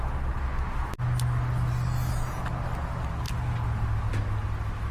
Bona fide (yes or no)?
yes